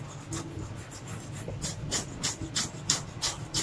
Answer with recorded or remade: recorded